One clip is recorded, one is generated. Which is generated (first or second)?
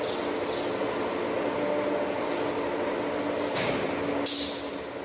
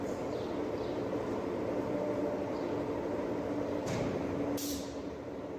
second